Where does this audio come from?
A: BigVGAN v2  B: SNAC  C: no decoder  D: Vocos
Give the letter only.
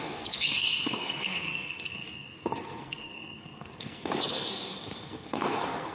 B